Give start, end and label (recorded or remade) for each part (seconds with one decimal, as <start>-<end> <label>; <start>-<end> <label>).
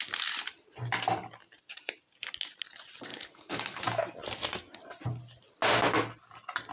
0.0-3.1 recorded; 3.1-3.8 remade; 3.8-6.7 recorded